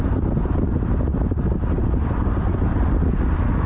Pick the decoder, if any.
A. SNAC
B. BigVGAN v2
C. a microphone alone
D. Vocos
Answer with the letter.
C